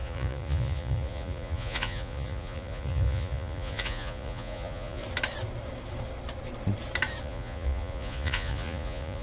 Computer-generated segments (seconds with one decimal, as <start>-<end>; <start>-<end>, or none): 0.0-5.0; 7.2-9.2